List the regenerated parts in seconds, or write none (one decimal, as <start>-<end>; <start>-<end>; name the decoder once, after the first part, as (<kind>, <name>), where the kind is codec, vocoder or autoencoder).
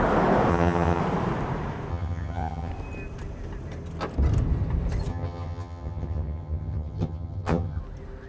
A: 0.5-1.0 (vocoder, HiFi-GAN); 1.9-2.7; 5.1-7.8